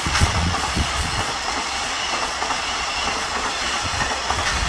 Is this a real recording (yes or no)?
no